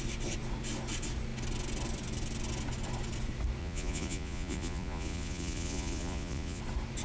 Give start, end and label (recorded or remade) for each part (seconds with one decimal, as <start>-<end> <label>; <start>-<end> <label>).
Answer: 0.0-3.6 recorded; 3.6-6.6 remade; 6.6-7.0 recorded